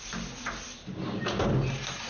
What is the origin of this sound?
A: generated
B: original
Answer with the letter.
B